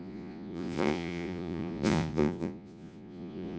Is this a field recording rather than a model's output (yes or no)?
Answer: no